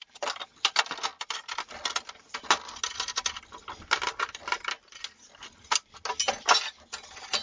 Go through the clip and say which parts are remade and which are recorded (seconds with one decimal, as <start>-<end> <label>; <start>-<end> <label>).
0.0-7.4 recorded